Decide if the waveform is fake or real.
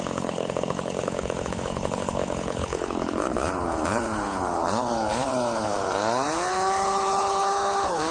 fake